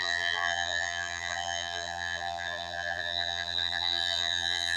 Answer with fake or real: fake